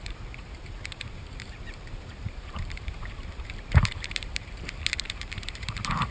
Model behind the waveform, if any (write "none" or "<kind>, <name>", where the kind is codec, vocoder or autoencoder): vocoder, BigVGAN v2